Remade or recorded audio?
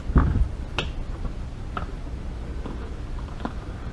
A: recorded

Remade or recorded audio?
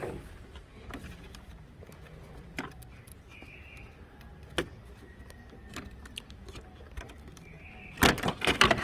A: recorded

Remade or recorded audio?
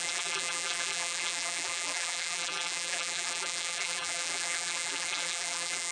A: remade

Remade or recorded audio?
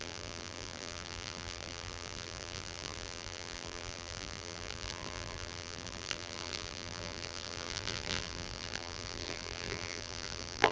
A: remade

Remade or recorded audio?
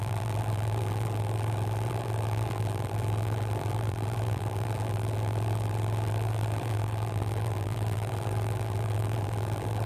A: remade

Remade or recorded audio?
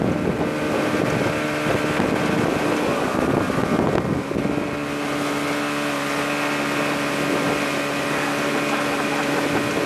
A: recorded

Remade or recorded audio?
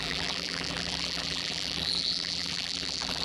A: remade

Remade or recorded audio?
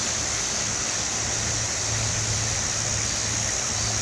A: recorded